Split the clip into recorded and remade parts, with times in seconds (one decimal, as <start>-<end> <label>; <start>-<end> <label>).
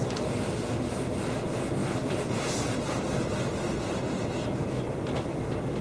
0.0-1.8 recorded; 1.8-5.3 remade; 5.3-5.8 recorded